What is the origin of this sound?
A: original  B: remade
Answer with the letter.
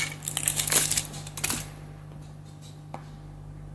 A